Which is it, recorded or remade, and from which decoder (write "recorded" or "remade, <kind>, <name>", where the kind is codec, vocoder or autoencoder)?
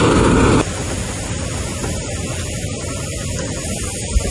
recorded